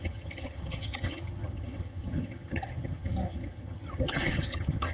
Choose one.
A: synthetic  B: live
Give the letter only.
A